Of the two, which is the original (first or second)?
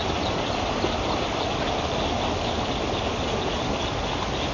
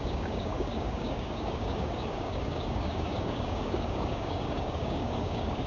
first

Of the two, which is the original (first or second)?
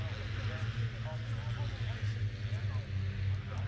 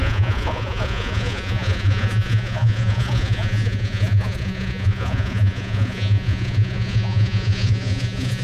first